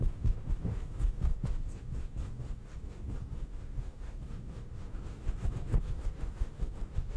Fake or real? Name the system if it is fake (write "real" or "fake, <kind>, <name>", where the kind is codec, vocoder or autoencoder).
fake, codec, DAC